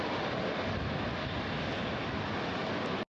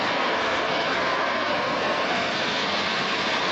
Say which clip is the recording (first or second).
first